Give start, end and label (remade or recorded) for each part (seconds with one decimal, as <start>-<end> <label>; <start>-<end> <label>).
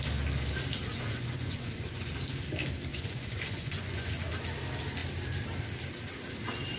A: 0.0-0.9 recorded; 0.9-2.1 remade; 2.1-2.9 recorded; 2.9-4.1 remade; 4.1-6.8 recorded